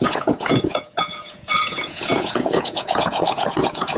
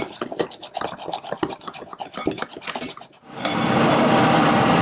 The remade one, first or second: first